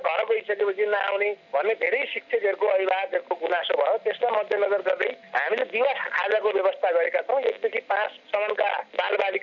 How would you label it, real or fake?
real